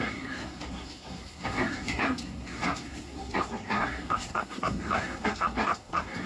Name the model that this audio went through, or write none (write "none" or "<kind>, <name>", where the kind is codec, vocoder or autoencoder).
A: codec, SNAC